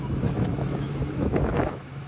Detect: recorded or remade remade